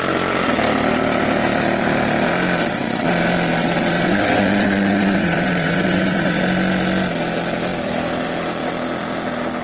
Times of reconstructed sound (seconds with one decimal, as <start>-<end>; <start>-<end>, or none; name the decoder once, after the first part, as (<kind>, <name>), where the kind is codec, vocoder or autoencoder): 2.6-3.1 (vocoder, WaveNeXt); 3.6-6.4